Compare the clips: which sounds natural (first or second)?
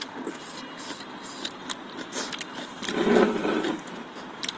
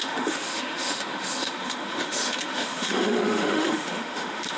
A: first